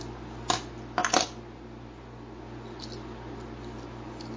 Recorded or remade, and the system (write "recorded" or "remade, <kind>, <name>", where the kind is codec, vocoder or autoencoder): recorded